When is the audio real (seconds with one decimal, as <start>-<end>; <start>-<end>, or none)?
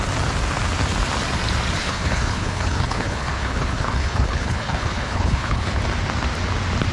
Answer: 0.0-1.8; 5.8-6.9